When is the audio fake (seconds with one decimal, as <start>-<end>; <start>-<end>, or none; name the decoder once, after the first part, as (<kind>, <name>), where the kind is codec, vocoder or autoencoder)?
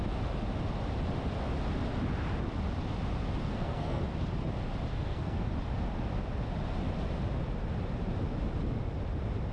3.4-4.0 (codec, SNAC); 4.9-5.5